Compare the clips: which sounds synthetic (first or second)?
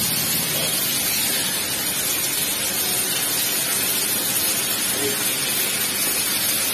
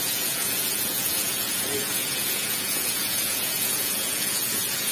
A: second